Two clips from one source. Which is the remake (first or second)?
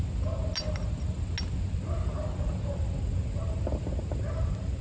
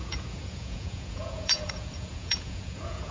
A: second